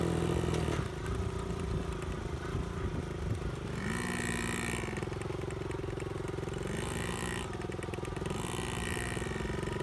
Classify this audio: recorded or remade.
recorded